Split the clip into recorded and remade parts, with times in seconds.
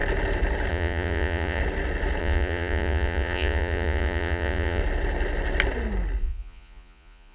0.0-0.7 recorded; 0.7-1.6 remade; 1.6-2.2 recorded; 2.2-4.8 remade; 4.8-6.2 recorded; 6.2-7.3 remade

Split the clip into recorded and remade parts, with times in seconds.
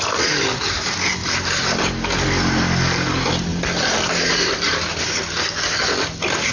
0.0-6.5 recorded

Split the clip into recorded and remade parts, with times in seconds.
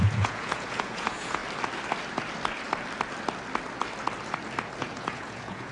0.0-1.4 remade; 1.4-4.8 recorded; 4.8-5.7 remade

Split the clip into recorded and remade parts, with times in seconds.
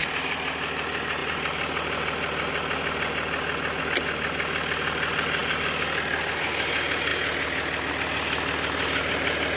0.0-9.6 recorded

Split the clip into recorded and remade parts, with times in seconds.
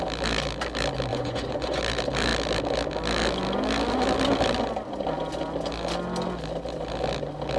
0.0-1.1 recorded; 1.1-1.8 remade; 1.8-7.6 recorded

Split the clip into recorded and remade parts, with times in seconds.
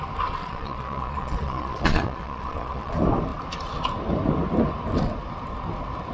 0.0-0.4 recorded; 0.4-2.9 remade; 2.9-6.1 recorded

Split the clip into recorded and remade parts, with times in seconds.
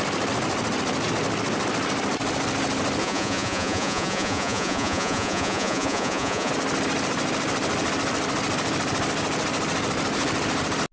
0.0-3.0 recorded; 3.0-6.5 remade; 6.5-10.9 recorded